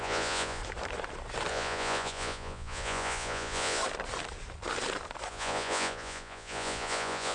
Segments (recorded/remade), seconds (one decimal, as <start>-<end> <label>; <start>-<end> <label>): 0.0-0.6 remade; 0.6-1.5 recorded; 1.5-3.8 remade; 3.8-5.3 recorded; 5.3-7.3 remade